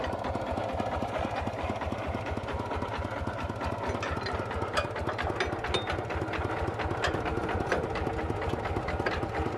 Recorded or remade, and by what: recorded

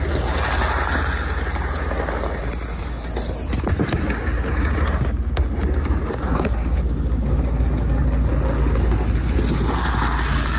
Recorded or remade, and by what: recorded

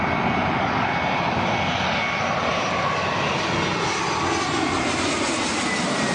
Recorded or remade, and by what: recorded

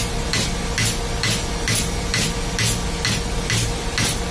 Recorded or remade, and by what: recorded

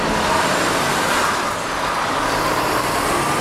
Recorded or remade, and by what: recorded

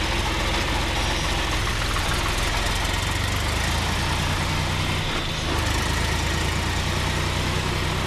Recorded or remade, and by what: recorded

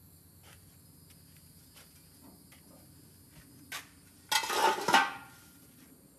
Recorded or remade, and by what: recorded